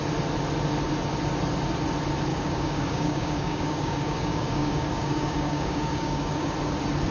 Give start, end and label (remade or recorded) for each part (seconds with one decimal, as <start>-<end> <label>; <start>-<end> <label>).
0.0-2.3 recorded; 2.3-6.5 remade; 6.5-7.1 recorded